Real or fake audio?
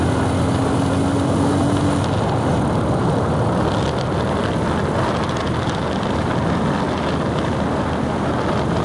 real